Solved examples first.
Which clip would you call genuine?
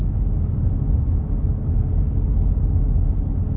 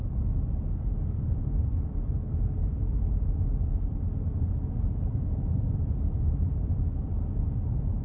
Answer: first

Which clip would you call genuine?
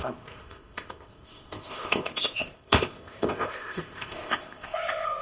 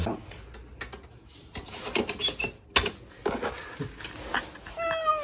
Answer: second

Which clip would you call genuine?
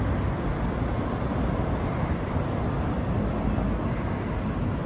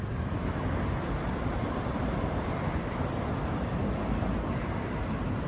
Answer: first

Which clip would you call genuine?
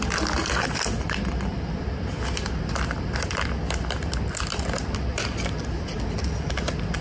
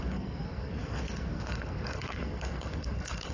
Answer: first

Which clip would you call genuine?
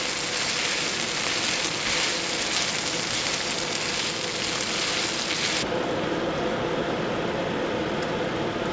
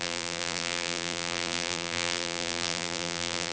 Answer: first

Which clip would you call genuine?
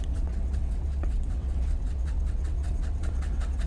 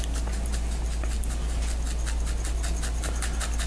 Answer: second